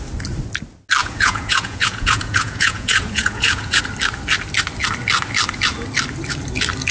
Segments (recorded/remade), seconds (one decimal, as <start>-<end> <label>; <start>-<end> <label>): 0.0-1.0 recorded; 1.0-3.8 remade; 3.8-6.9 recorded